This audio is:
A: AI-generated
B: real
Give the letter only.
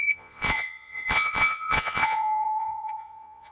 A